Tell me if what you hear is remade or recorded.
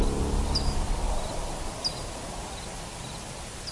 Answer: recorded